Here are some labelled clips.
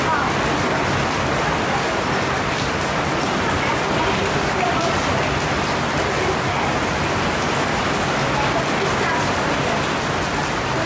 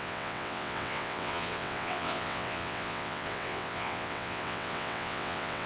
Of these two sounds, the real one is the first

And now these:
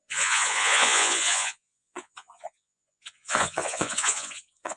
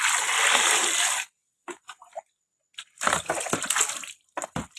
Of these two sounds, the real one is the second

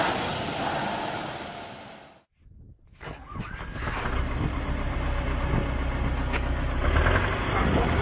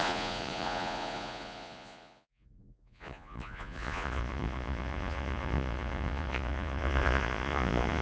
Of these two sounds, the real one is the first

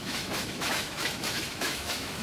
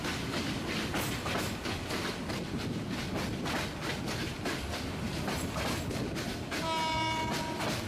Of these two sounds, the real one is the second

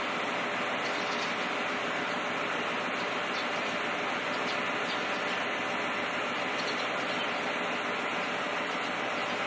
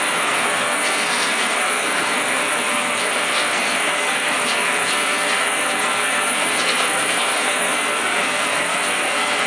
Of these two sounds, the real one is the first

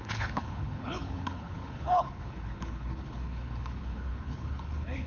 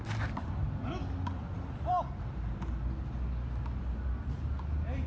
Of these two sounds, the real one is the second